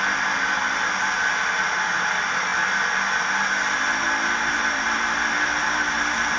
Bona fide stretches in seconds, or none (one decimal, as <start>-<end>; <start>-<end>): 0.0-6.4